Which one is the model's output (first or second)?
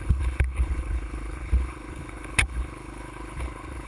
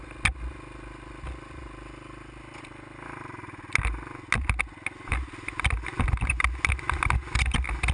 first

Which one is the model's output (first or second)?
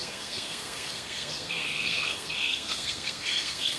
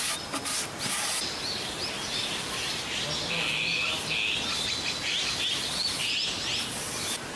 first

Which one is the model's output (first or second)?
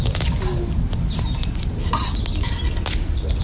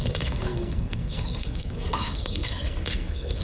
second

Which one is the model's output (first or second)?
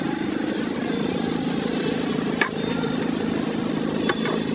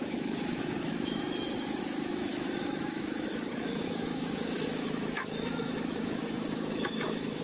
second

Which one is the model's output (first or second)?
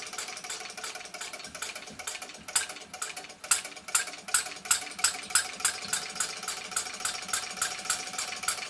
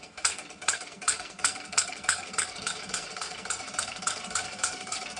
second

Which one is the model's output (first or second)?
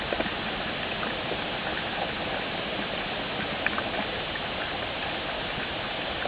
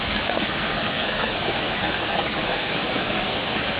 second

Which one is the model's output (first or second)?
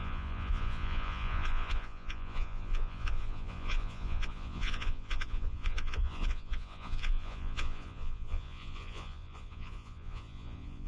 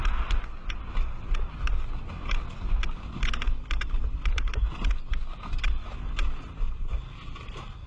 first